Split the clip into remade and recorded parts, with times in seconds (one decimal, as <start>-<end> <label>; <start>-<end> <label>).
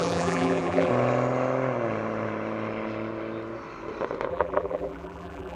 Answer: 0.0-0.9 remade; 0.9-4.3 recorded; 4.3-5.6 remade